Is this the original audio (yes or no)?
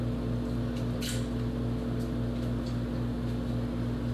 yes